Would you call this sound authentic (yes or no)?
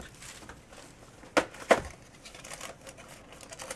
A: yes